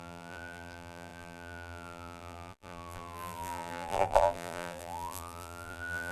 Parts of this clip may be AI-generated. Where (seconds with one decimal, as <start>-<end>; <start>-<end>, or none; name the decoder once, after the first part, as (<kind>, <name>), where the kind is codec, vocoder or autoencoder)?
0.0-6.1 (vocoder, BigVGAN v2)